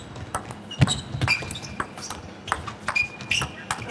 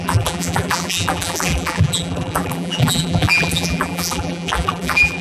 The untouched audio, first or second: first